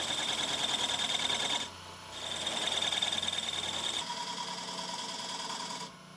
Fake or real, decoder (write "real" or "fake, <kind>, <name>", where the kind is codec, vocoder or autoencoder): real